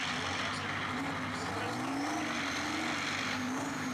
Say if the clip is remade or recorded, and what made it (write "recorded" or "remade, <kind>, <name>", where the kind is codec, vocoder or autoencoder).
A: recorded